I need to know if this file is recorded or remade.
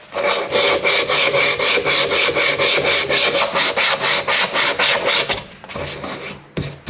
recorded